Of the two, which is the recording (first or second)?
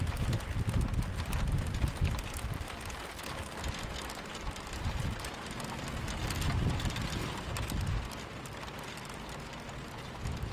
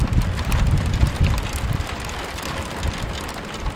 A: first